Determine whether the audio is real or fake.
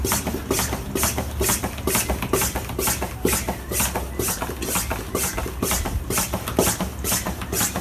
real